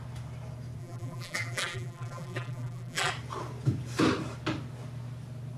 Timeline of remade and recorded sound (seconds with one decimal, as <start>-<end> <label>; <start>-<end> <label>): 0.0-0.8 recorded; 0.8-3.1 remade; 3.1-5.6 recorded